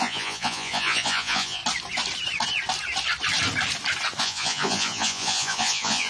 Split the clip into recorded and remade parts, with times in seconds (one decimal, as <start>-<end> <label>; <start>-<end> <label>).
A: 0.0-1.6 remade; 1.6-4.2 recorded; 4.2-6.1 remade